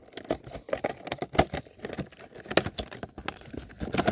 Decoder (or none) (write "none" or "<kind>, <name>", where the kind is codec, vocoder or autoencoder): none